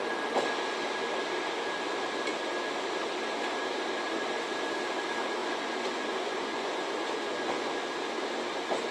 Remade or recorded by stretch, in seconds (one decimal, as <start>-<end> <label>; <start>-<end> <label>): 0.0-5.4 recorded; 5.4-7.9 remade; 7.9-8.9 recorded